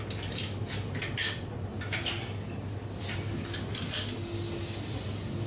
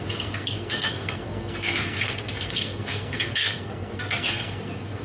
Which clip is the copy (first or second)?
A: second